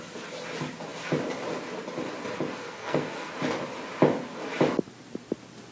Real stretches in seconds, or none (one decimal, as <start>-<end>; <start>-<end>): 0.0-2.6; 3.3-5.7